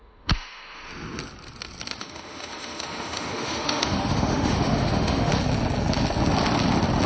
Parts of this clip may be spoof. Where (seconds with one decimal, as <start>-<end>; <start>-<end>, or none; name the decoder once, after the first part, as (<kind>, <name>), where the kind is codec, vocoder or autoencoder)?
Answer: 0.0-0.9 (autoencoder, DAC-VAE); 2.0-5.3